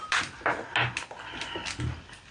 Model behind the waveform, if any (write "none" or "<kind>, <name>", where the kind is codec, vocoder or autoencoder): none